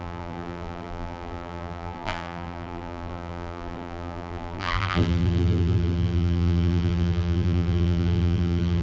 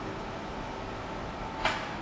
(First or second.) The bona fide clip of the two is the second